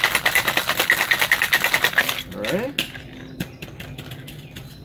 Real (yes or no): yes